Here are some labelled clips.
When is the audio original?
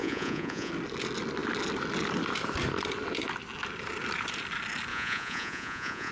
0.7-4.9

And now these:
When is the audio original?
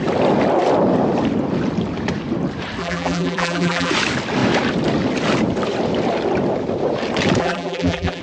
0.0-2.8; 3.9-7.4